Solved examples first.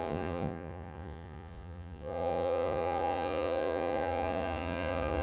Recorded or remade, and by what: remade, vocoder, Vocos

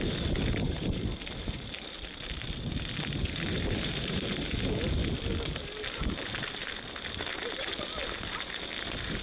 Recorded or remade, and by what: recorded